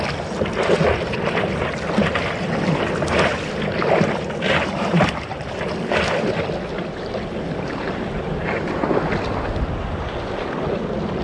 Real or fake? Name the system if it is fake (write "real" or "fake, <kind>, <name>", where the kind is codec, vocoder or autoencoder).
real